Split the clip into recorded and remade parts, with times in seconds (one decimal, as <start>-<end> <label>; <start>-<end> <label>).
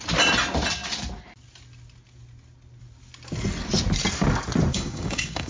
0.0-4.7 recorded; 4.7-5.5 remade